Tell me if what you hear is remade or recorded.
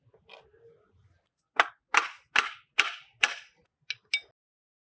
recorded